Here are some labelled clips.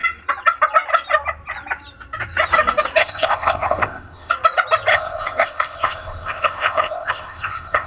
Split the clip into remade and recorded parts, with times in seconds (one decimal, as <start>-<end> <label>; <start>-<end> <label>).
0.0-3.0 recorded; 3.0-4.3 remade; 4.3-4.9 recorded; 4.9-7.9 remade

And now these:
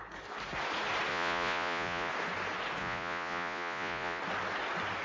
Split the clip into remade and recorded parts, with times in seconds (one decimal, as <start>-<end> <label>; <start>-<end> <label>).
0.0-1.1 recorded; 1.1-2.1 remade; 2.1-2.8 recorded; 2.8-4.2 remade; 4.2-5.0 recorded

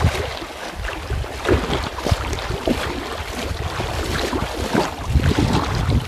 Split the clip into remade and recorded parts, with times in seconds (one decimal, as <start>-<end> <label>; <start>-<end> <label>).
0.0-1.9 recorded; 1.9-5.1 remade; 5.1-6.1 recorded

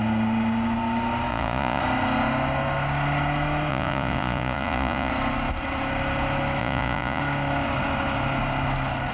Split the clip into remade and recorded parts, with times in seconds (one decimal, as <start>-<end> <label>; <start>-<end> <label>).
0.0-1.3 recorded; 1.3-1.8 remade; 1.8-3.7 recorded; 3.7-5.1 remade; 5.1-6.6 recorded; 6.6-7.2 remade; 7.2-9.1 recorded

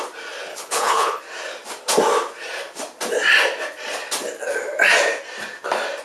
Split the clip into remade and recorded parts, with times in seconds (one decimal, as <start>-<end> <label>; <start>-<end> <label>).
0.0-0.5 recorded; 0.5-1.2 remade; 1.2-6.0 recorded